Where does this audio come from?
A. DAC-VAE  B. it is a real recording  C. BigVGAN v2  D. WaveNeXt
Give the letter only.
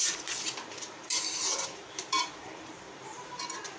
C